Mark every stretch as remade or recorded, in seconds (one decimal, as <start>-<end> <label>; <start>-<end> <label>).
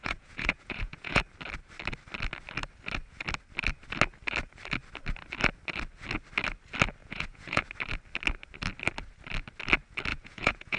0.0-1.2 remade; 1.2-7.0 recorded; 7.0-7.6 remade; 7.6-10.1 recorded; 10.1-10.8 remade